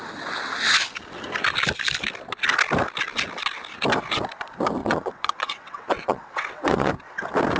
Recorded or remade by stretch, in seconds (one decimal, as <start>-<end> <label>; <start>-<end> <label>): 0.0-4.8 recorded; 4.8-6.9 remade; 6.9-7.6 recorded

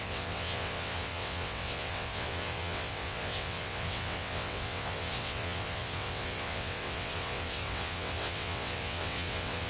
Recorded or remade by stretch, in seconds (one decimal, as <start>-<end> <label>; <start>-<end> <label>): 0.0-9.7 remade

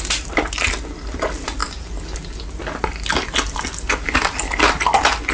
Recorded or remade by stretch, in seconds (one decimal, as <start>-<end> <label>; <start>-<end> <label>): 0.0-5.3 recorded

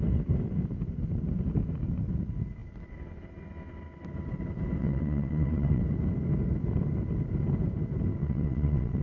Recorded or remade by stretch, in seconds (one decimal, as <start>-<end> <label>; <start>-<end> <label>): 0.0-4.8 recorded; 4.8-5.8 remade; 5.8-8.2 recorded; 8.2-9.0 remade

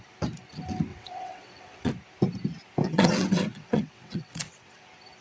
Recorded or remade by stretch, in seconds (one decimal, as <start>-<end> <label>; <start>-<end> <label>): 0.0-0.9 recorded; 0.9-1.9 remade; 1.9-2.8 recorded; 2.8-4.8 remade; 4.8-5.2 recorded

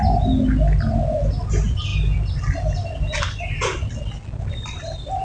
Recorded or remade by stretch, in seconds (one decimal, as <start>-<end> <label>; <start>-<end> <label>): 0.0-5.2 recorded

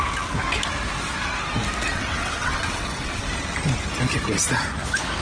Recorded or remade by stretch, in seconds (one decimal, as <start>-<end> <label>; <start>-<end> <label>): 0.0-1.9 recorded; 1.9-3.2 remade; 3.2-5.2 recorded